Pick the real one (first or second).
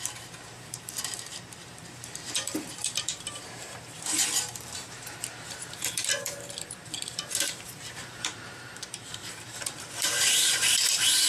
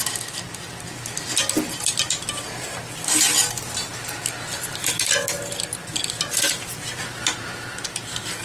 second